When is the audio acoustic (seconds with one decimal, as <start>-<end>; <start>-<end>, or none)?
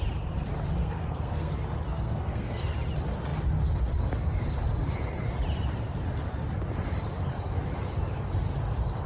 0.0-0.8; 1.5-1.9; 2.6-9.1